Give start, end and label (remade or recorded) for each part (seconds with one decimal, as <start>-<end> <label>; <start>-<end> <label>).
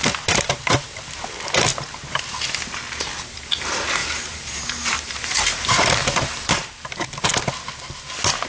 0.0-4.0 recorded; 4.0-6.7 remade; 6.7-8.5 recorded